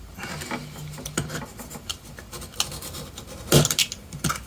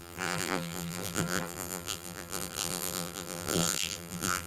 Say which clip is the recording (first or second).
first